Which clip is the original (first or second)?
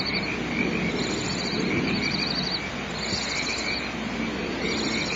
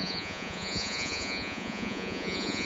first